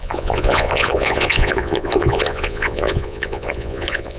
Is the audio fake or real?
fake